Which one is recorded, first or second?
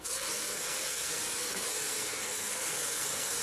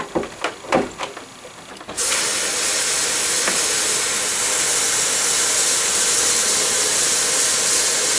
second